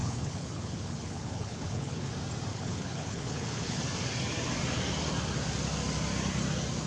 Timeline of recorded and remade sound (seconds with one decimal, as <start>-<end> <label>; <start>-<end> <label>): 0.0-2.1 remade; 2.1-2.5 recorded; 2.5-3.8 remade; 3.8-6.9 recorded